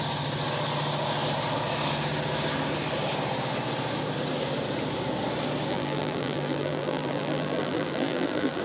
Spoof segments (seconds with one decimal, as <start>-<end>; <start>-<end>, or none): 5.7-8.6